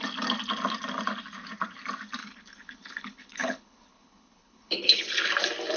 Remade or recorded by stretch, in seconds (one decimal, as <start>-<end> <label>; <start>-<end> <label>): 0.0-2.2 recorded; 2.2-5.3 remade; 5.3-5.8 recorded